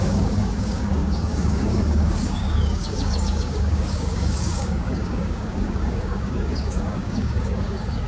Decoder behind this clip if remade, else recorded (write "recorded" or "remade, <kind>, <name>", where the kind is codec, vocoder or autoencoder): remade, codec, DAC